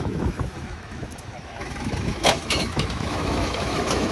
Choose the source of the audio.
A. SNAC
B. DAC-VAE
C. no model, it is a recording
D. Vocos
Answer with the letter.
B